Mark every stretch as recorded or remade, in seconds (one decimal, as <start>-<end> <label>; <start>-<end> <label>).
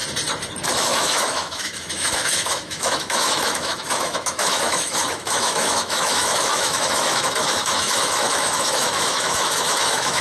0.0-0.7 recorded; 0.7-10.2 remade